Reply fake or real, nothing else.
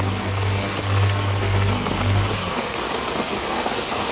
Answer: fake